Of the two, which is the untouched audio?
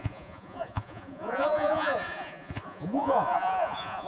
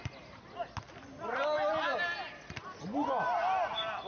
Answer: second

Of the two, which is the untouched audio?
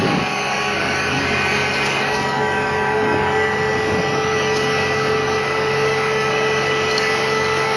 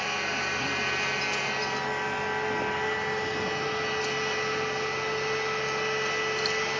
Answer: second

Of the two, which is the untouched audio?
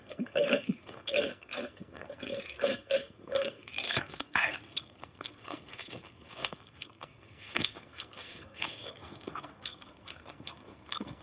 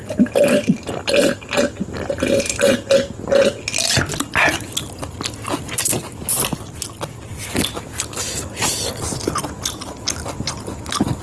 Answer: second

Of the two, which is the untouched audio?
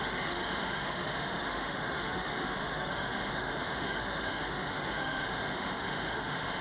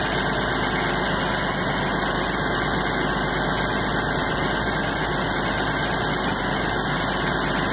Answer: second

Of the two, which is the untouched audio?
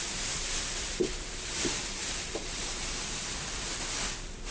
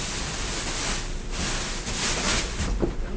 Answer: second